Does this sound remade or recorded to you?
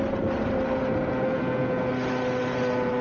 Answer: recorded